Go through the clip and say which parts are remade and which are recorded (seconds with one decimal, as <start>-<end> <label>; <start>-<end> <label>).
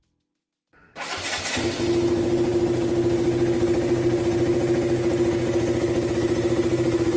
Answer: 0.0-7.2 recorded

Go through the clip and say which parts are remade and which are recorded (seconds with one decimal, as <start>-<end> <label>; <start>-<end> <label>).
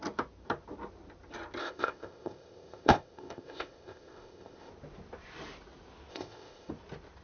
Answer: 0.0-1.6 recorded; 1.6-4.7 remade; 4.7-6.1 recorded; 6.1-6.7 remade; 6.7-7.2 recorded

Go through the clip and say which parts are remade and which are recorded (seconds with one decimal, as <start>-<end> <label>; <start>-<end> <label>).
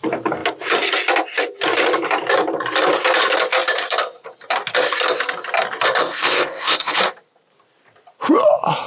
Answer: 0.0-6.0 recorded; 6.0-7.0 remade; 7.0-8.9 recorded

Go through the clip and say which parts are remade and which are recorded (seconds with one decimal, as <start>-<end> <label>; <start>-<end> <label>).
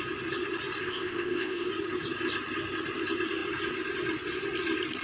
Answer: 0.0-0.8 recorded; 0.8-1.7 remade; 1.7-5.0 recorded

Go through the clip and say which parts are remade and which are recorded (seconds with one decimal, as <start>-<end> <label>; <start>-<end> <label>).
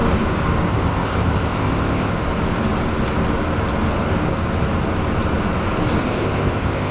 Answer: 0.0-0.7 recorded; 0.7-2.1 remade; 2.1-6.0 recorded; 6.0-6.9 remade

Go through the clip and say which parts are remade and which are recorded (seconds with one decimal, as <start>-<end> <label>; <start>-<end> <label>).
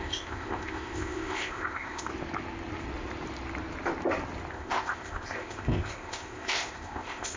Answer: 0.0-2.1 remade; 2.1-4.5 recorded; 4.5-7.4 remade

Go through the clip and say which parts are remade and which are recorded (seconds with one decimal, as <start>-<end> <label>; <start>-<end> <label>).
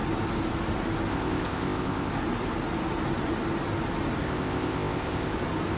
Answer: 0.0-1.1 recorded; 1.1-2.1 remade; 2.1-4.2 recorded; 4.2-5.3 remade; 5.3-5.8 recorded